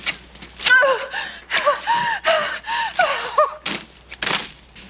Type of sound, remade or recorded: recorded